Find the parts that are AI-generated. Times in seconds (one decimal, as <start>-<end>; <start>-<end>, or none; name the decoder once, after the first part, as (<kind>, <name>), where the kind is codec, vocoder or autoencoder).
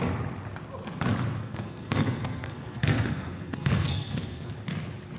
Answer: 1.4-4.5 (codec, SNAC)